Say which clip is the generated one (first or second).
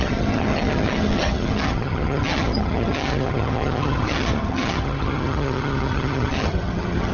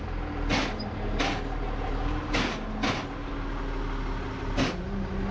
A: first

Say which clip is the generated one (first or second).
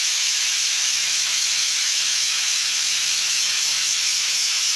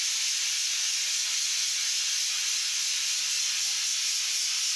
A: first